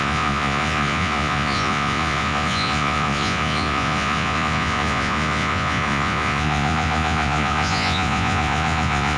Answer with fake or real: fake